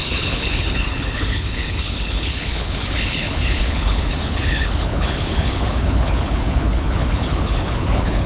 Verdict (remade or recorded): remade